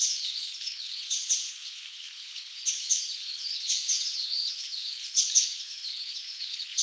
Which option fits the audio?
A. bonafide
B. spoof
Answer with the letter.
B